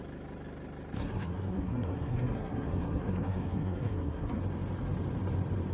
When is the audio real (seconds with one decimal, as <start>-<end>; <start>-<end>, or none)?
0.0-1.0; 4.4-5.7